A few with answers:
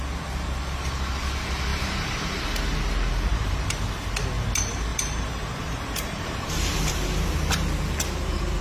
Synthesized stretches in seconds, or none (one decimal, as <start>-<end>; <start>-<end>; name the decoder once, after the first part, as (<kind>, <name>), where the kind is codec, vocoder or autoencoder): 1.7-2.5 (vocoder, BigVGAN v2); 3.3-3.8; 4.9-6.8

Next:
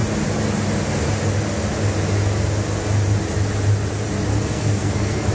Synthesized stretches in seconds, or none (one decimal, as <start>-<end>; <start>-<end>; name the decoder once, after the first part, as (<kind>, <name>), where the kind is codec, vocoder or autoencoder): 4.3-5.3 (codec, SNAC)

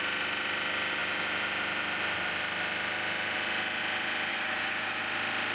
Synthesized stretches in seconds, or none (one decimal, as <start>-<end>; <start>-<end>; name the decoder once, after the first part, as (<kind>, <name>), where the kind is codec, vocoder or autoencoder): 4.3-5.0 (codec, DAC)